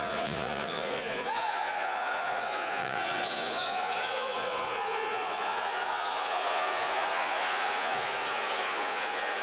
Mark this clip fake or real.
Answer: fake